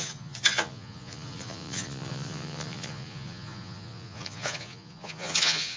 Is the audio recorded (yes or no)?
no